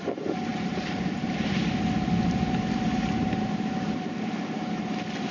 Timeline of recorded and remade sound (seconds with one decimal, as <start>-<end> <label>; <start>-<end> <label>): 0.0-0.5 recorded; 0.5-1.6 remade; 1.6-2.4 recorded; 2.4-4.1 remade; 4.1-5.3 recorded